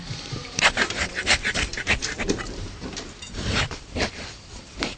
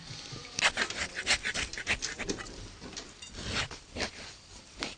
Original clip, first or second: second